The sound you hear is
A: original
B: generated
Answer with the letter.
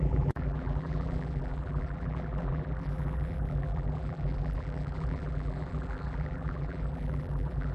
B